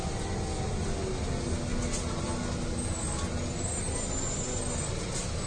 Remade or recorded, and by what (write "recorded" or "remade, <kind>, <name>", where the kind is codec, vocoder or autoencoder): recorded